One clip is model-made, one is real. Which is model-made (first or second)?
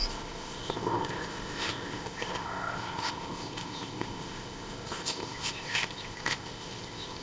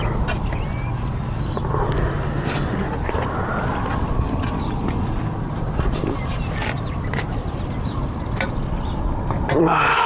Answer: first